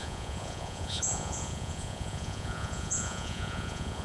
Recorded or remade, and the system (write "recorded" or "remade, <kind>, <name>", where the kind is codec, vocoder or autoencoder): remade, vocoder, Vocos